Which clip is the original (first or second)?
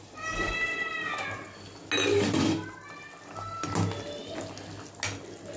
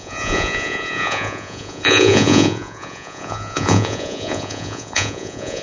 first